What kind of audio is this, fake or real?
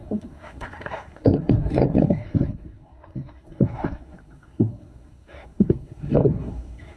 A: fake